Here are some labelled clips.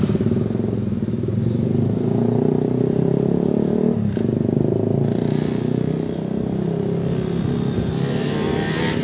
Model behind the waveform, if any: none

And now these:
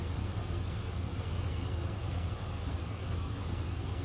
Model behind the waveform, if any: codec, SNAC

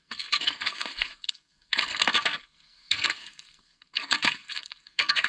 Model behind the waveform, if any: codec, SNAC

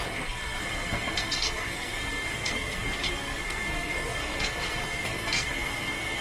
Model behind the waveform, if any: codec, SNAC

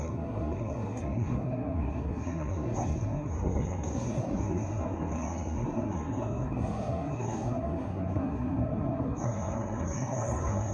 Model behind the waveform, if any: codec, SNAC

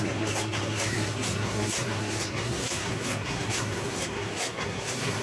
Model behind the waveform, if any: codec, SNAC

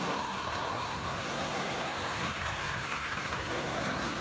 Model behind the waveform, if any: codec, SNAC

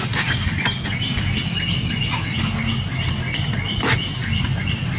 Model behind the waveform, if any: none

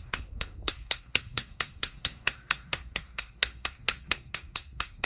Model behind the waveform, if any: codec, SNAC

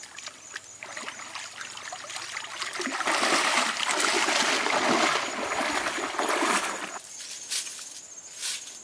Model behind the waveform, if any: none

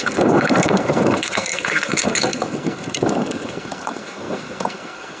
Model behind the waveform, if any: codec, SNAC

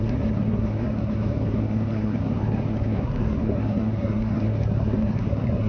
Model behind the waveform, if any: codec, SNAC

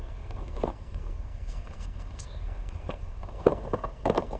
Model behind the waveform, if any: codec, SNAC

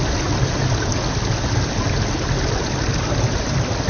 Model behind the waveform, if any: none